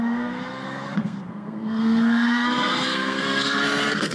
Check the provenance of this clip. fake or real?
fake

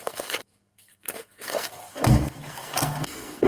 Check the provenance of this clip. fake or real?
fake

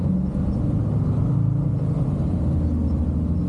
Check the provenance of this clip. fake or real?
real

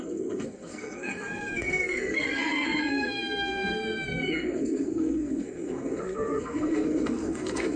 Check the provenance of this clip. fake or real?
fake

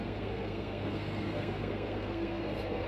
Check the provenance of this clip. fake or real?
fake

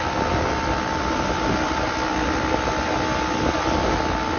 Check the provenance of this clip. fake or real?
real